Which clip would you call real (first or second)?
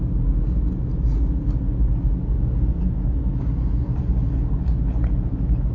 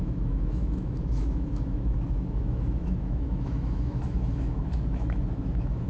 first